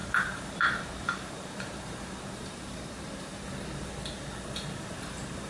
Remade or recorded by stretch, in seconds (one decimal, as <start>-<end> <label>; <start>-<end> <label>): 0.0-3.3 remade; 3.3-4.5 recorded; 4.5-5.5 remade